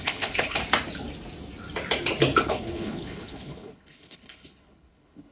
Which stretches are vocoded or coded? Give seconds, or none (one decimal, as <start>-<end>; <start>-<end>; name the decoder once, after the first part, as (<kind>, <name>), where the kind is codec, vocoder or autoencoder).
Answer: 0.0-0.6 (codec, HILCodec); 2.4-5.3